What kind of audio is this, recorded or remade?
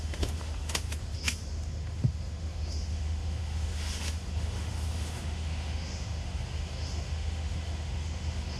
remade